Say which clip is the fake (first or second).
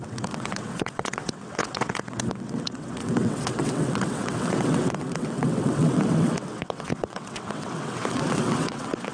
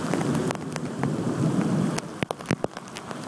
first